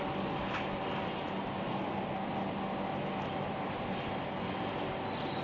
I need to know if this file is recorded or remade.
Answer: recorded